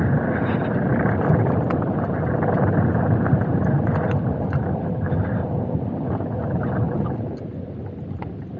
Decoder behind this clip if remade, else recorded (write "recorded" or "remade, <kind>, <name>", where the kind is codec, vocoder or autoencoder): recorded